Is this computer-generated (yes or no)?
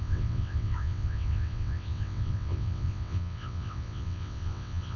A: yes